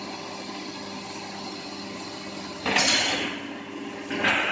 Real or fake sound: real